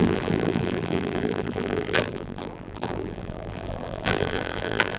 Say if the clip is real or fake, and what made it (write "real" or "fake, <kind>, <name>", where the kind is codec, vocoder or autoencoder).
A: fake, vocoder, BigVGAN v2